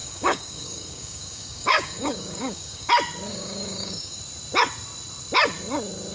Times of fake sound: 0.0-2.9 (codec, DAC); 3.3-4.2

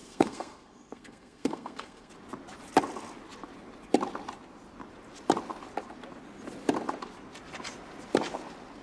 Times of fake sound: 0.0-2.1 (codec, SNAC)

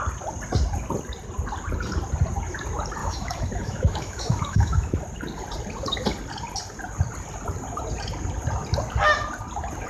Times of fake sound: 3.0-5.0 (autoencoder, DAC-VAE)